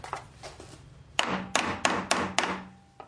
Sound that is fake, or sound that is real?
real